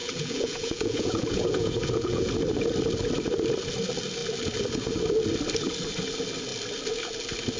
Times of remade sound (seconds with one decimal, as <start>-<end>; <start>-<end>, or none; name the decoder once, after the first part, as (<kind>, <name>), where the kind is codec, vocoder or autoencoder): 0.0-2.3 (vocoder, Vocos)